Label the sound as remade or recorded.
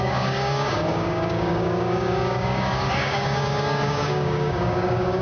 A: remade